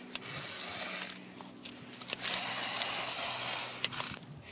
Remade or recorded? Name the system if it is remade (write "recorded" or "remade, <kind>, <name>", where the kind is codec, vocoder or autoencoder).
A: recorded